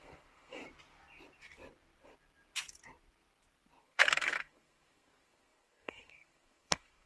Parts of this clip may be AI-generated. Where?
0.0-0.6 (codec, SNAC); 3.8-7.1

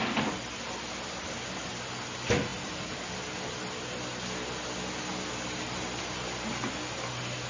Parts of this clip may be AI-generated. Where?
none

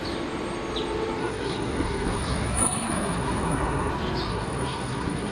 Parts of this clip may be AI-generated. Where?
1.2-3.9 (codec, SNAC); 4.3-5.3